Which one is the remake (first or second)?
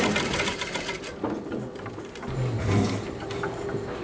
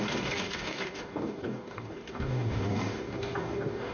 second